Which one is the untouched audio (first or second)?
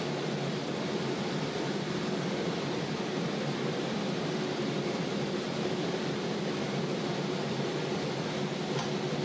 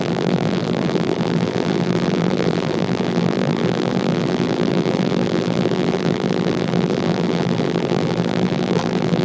first